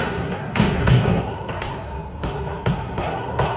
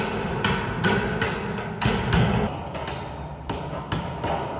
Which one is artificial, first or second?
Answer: first